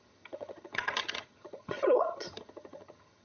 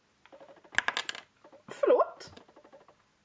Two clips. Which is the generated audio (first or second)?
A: first